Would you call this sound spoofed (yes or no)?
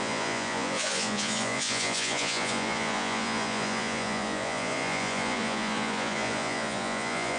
yes